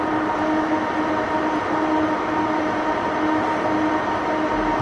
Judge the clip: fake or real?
real